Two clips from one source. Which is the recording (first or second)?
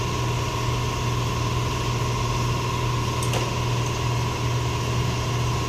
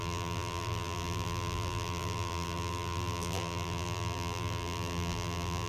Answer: first